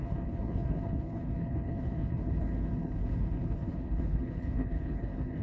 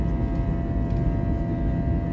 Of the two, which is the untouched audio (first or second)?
second